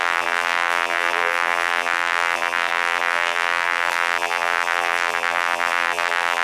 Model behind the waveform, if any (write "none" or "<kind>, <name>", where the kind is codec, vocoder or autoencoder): vocoder, BigVGAN v2